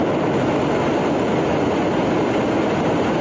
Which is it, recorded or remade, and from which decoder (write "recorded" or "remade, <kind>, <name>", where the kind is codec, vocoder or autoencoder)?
recorded